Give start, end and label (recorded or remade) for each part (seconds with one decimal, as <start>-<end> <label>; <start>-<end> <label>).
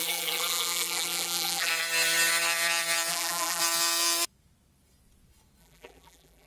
0.0-1.7 remade; 1.7-3.1 recorded; 3.1-3.6 remade; 3.6-5.6 recorded; 5.6-6.5 remade